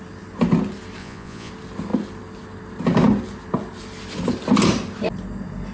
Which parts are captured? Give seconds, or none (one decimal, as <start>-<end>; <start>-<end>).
0.0-1.0; 1.5-5.7